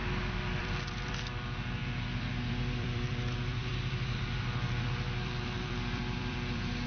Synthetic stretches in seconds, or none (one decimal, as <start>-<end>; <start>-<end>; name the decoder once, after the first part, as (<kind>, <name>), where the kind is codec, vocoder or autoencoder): 0.6-1.8 (vocoder, BigVGAN v2); 2.5-6.9